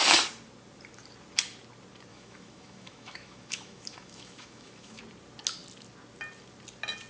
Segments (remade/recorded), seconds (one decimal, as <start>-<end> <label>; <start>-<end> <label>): 0.0-2.1 recorded; 2.1-5.0 remade; 5.0-7.1 recorded